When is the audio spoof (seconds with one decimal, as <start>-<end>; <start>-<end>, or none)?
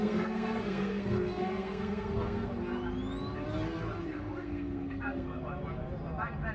0.0-2.5; 4.1-5.4